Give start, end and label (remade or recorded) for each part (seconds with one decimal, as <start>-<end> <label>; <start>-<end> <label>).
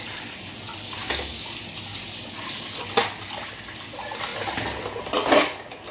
0.0-5.9 recorded